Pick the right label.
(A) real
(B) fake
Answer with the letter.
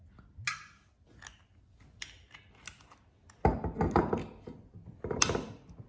A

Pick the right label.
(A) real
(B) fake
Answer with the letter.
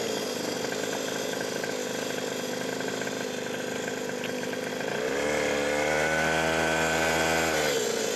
A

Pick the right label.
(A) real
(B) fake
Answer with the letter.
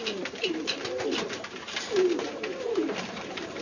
B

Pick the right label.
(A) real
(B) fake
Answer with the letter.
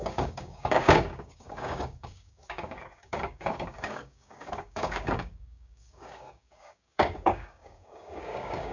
B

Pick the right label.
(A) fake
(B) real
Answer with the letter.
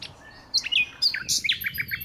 B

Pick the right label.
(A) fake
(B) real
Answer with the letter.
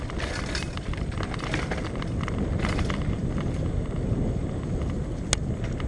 B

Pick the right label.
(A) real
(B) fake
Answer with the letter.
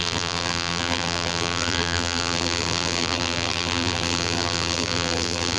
B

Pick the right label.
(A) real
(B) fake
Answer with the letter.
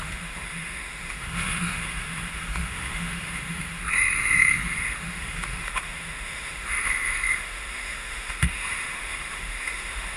B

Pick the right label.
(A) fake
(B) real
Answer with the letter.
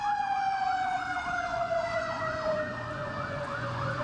A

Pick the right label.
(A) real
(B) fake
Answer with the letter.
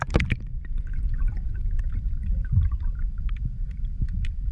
A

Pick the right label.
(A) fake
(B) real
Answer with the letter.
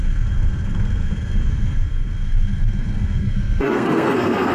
A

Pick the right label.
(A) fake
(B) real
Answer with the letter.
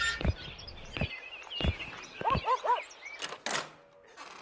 B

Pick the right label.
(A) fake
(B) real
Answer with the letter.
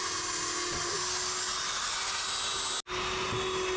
B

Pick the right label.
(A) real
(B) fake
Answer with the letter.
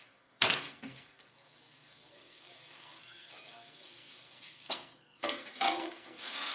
B